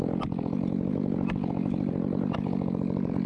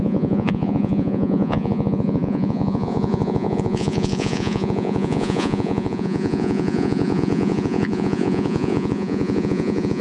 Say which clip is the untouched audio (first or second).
first